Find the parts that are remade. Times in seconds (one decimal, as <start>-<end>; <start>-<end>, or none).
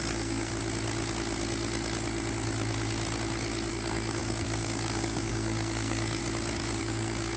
0.0-0.5; 3.7-6.2; 6.8-7.4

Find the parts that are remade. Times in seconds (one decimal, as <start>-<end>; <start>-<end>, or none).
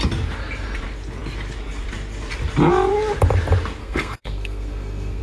3.8-5.2